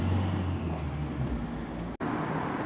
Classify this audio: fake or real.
real